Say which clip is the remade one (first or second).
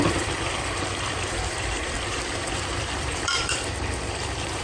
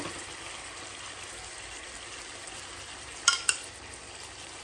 first